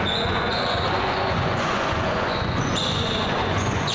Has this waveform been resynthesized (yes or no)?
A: yes